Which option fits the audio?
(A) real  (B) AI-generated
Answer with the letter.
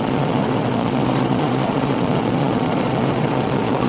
B